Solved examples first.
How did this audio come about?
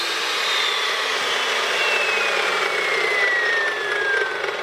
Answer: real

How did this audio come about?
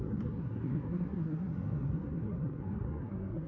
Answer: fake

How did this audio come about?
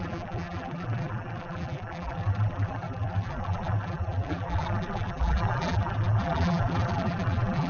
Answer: fake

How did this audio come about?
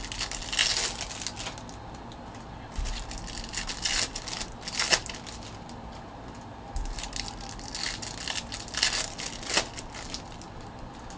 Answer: real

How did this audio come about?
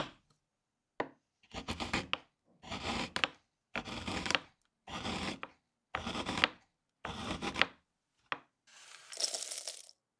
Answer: real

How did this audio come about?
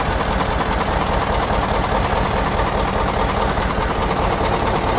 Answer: real